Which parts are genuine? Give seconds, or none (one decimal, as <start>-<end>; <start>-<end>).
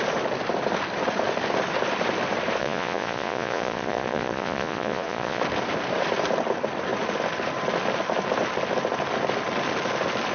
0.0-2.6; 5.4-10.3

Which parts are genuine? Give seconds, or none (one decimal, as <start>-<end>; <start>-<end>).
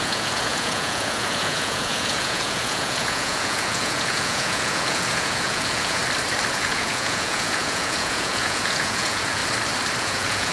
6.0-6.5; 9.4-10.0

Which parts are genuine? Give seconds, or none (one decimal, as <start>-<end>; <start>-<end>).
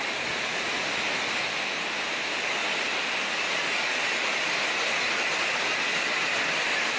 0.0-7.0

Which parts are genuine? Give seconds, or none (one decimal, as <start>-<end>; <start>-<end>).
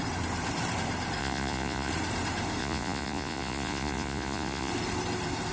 0.0-1.2; 1.9-2.6; 4.7-5.5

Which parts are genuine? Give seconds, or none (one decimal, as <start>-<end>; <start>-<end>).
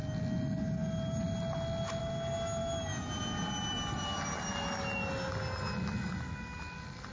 0.0-7.1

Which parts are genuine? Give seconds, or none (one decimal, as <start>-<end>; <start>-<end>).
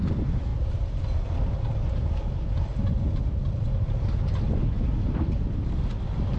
0.0-6.4